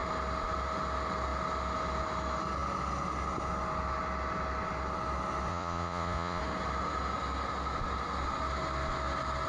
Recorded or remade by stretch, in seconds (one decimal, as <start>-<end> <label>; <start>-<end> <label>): 0.0-5.5 recorded; 5.5-6.4 remade; 6.4-9.5 recorded